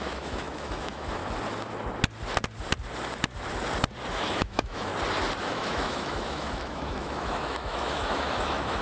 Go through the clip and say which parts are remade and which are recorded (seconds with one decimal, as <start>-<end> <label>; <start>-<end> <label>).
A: 0.0-1.2 remade; 1.2-4.1 recorded; 4.1-4.9 remade; 4.9-5.4 recorded; 5.4-8.8 remade